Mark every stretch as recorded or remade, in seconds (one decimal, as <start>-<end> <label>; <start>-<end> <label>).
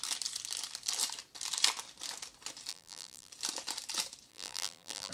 0.0-2.7 recorded; 2.7-3.3 remade; 3.3-4.3 recorded; 4.3-5.1 remade